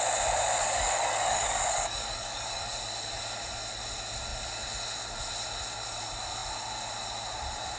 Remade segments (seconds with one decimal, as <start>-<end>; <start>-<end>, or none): 0.6-2.7